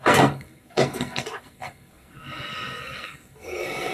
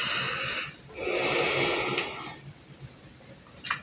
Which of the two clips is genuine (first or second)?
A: second